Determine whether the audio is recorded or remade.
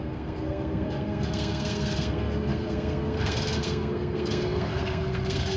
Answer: remade